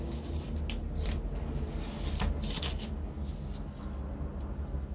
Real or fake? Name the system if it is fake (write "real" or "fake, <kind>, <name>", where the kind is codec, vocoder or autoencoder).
real